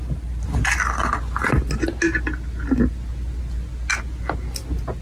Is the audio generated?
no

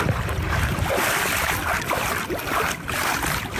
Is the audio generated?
no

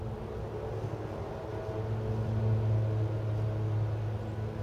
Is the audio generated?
no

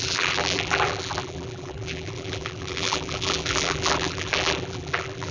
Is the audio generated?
yes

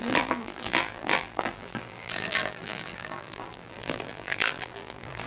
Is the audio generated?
yes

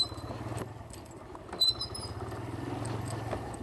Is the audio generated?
no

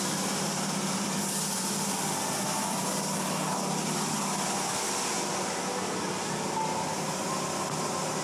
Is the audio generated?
no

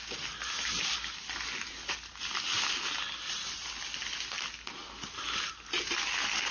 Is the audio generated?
no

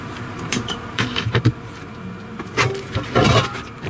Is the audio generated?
yes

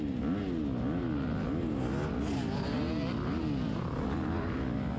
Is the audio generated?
no